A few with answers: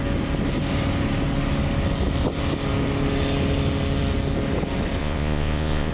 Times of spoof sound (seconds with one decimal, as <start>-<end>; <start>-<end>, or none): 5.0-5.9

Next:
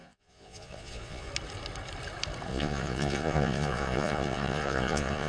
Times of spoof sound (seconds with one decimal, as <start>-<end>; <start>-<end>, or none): 0.0-1.3; 2.5-5.3

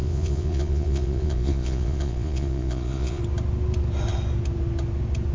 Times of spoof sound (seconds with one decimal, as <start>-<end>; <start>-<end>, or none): 0.0-3.2

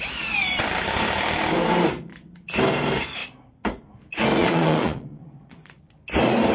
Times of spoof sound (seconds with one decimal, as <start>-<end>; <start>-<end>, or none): 4.4-5.8

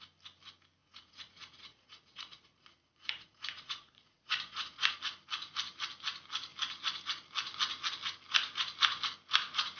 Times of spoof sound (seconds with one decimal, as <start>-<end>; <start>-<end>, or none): 0.8-4.9

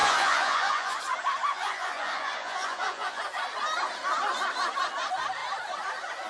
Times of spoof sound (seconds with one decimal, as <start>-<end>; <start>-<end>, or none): 0.0-1.0; 1.5-3.2

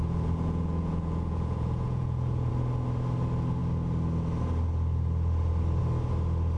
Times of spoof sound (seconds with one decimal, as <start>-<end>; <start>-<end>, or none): 0.0-2.5